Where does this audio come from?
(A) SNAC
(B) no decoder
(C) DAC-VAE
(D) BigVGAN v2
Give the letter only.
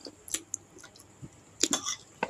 B